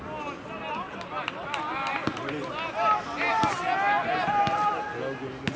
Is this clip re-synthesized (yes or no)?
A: no